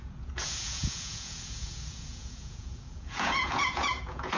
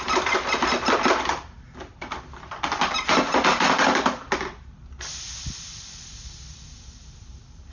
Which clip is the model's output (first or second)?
first